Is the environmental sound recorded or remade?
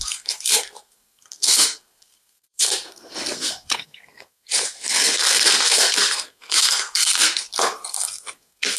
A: remade